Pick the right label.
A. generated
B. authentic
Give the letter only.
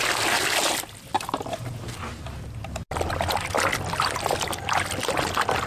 B